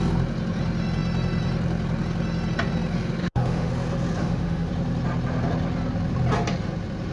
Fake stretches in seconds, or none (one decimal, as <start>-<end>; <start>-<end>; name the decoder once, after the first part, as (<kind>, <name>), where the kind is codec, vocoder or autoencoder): 3.2-3.7 (autoencoder, DAC-VAE); 4.2-4.7